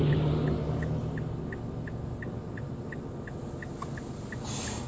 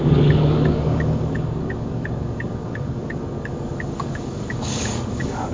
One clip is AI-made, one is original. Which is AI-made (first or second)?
second